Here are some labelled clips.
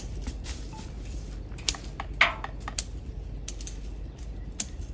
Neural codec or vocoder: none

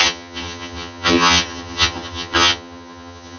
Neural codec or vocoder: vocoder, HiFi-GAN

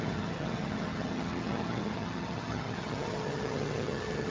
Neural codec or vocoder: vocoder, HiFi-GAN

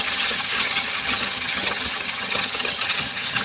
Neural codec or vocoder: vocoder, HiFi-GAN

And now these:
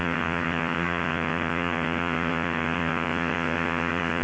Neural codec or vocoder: vocoder, HiFi-GAN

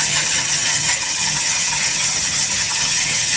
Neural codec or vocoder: vocoder, HiFi-GAN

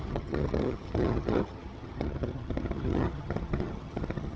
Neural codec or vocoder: vocoder, HiFi-GAN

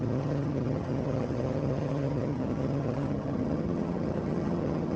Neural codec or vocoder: vocoder, HiFi-GAN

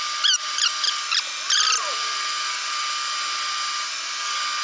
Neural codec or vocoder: none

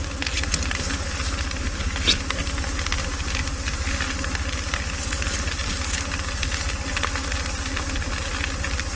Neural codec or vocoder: none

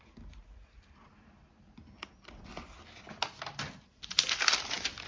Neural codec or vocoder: none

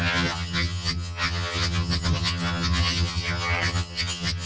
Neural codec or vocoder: vocoder, HiFi-GAN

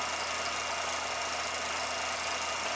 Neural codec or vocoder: none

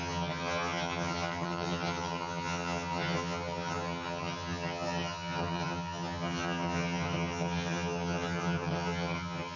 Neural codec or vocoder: vocoder, HiFi-GAN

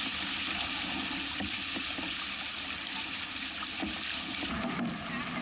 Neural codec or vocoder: none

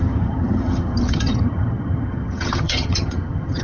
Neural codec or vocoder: vocoder, HiFi-GAN